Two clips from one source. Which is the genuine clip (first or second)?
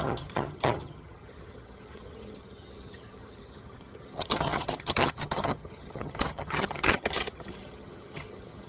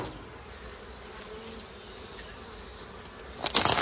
second